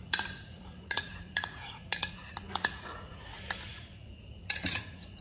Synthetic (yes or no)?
yes